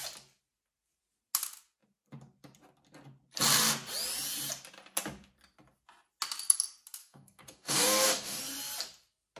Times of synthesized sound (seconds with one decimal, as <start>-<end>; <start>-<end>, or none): 7.0-8.4